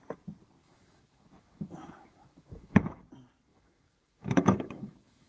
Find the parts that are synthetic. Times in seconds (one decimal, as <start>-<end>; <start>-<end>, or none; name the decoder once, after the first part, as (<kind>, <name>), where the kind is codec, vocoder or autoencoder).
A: 0.6-3.0 (autoencoder, DAC-VAE); 3.5-5.3